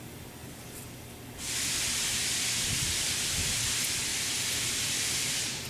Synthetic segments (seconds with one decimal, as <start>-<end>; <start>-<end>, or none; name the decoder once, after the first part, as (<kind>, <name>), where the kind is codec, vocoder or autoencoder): 0.4-1.2 (vocoder, BigVGAN v2); 4.1-5.2